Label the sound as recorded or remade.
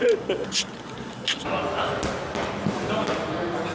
recorded